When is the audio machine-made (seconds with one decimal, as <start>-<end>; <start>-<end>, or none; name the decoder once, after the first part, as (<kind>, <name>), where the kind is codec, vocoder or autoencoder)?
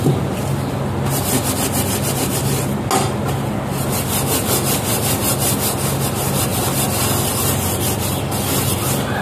none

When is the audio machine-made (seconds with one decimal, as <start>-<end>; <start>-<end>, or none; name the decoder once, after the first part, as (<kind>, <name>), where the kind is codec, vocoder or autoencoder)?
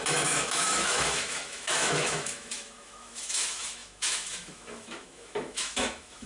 0.0-6.3 (autoencoder, DAC-VAE)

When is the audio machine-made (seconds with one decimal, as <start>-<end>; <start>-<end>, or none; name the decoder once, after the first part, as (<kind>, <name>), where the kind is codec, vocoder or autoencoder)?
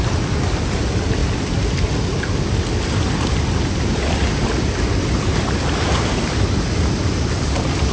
none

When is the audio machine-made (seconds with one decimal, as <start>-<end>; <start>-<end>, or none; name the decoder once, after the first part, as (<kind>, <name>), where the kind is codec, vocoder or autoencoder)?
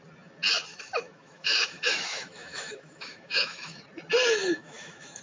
0.7-3.8 (autoencoder, DAC-VAE); 4.4-5.2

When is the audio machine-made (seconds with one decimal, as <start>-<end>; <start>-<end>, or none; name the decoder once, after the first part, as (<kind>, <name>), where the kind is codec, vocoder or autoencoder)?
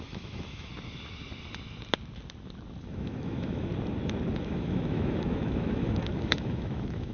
0.0-0.7 (autoencoder, DAC-VAE); 2.8-3.7; 4.4-7.1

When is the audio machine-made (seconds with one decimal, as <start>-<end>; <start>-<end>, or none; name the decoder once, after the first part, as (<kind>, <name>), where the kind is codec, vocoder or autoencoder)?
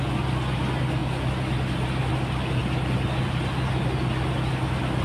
none